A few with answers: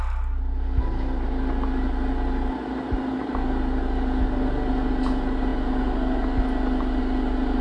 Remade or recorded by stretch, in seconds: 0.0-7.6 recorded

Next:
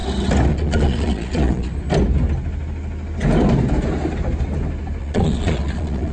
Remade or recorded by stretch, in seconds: 0.0-0.5 recorded; 0.5-1.7 remade; 1.7-5.0 recorded; 5.0-6.1 remade

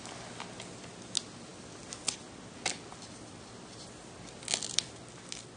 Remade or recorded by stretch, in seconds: 0.0-5.6 recorded

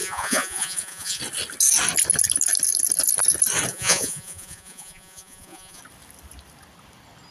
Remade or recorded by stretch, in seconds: 0.0-1.2 remade; 1.2-3.7 recorded; 3.7-5.8 remade; 5.8-7.3 recorded